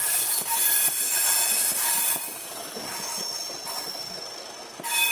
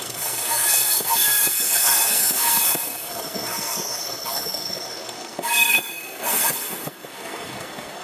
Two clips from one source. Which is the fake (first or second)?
second